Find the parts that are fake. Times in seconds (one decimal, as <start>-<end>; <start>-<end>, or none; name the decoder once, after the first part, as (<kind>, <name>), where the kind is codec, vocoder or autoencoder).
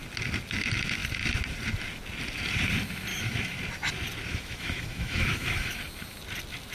3.1-3.6 (autoencoder, DAC-VAE); 4.3-5.8